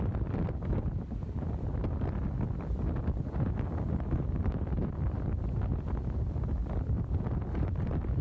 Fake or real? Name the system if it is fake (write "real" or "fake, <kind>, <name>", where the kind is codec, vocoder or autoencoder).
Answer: fake, vocoder, BigVGAN v2